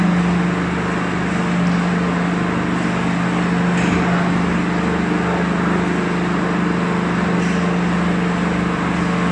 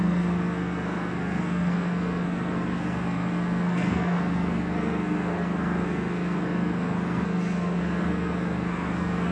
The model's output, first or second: second